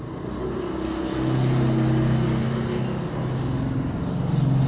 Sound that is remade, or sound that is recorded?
recorded